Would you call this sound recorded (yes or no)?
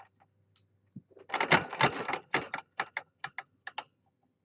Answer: yes